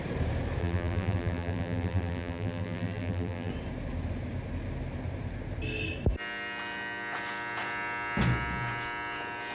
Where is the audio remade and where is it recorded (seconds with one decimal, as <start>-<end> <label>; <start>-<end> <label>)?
0.0-0.6 recorded; 0.6-3.5 remade; 3.5-9.5 recorded